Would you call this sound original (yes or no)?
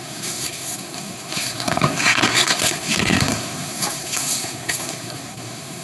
no